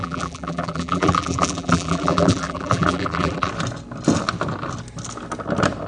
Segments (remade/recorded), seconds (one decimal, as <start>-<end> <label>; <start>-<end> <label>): 0.0-3.5 remade; 3.5-5.9 recorded